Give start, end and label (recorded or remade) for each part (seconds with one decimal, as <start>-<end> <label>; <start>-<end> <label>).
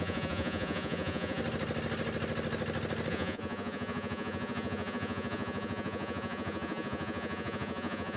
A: 0.0-1.4 remade; 1.4-3.1 recorded; 3.1-8.2 remade